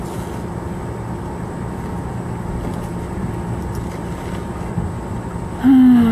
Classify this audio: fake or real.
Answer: real